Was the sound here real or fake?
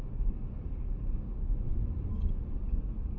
real